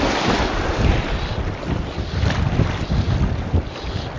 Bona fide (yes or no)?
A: yes